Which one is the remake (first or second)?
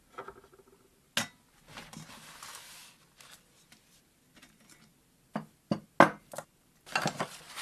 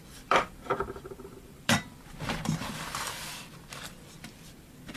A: second